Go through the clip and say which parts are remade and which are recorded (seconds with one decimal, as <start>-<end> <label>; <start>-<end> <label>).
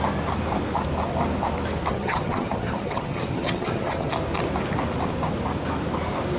0.0-1.9 recorded; 1.9-4.1 remade; 4.1-6.4 recorded